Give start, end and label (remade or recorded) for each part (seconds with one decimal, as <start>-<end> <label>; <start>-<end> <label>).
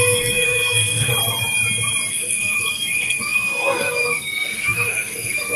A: 0.0-1.1 remade; 1.1-2.1 recorded; 2.1-5.6 remade